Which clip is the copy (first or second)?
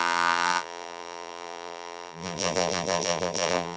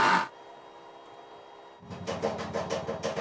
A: first